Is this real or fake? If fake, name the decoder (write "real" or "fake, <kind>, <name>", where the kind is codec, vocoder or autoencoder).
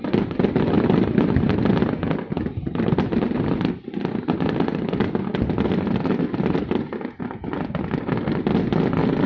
real